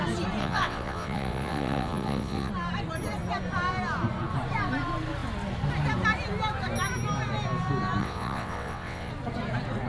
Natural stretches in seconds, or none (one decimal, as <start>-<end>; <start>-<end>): 0.0-0.4; 2.5-8.0; 9.1-9.9